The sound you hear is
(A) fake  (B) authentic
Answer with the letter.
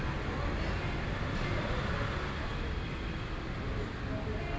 B